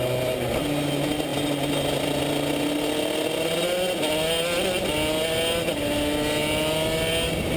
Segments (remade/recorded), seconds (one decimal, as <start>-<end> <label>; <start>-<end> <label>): 0.0-7.6 recorded